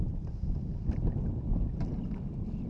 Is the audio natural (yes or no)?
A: yes